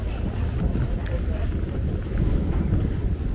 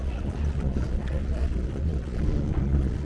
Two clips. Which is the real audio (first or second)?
first